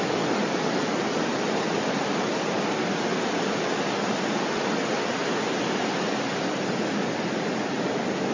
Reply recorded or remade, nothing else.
recorded